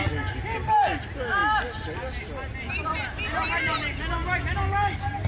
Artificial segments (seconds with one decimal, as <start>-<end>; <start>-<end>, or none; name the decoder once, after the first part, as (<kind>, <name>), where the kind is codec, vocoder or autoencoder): none